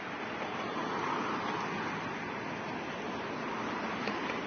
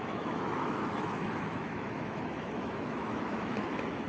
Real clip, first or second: first